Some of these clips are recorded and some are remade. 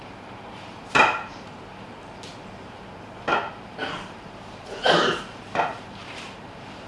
remade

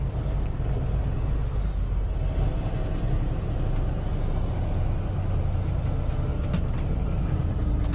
recorded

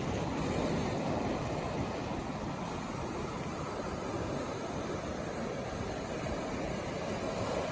recorded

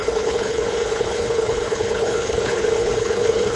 remade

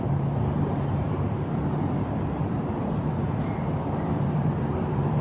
remade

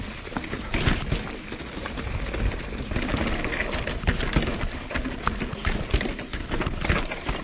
recorded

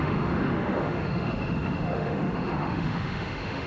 remade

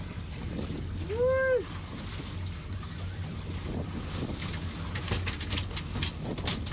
recorded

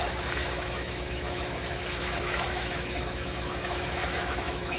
remade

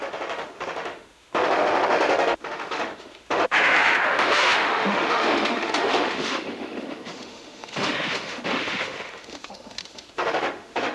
remade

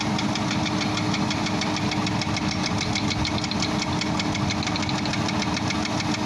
recorded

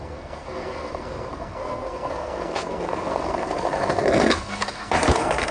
remade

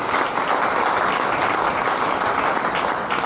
recorded